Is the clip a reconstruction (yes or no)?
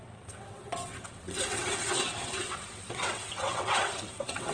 yes